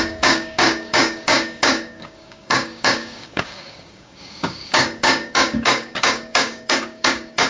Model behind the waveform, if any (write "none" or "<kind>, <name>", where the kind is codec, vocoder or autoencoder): codec, DAC